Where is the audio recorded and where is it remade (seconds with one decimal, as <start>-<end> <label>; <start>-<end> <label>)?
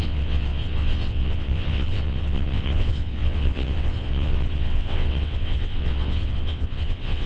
0.0-7.3 remade